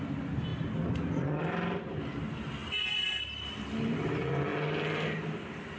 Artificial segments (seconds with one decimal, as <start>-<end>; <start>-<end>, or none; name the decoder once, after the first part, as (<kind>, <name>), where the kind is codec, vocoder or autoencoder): none